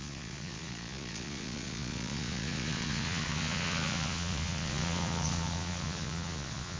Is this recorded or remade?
remade